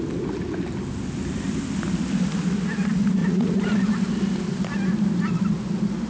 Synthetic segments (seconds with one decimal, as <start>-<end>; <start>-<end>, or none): 3.2-3.8